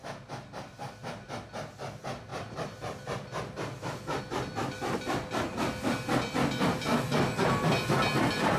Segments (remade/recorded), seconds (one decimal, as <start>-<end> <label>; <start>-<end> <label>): 0.0-8.6 recorded